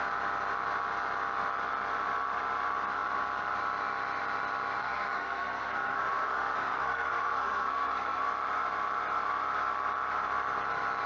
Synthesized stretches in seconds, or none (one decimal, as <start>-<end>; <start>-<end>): 4.8-8.2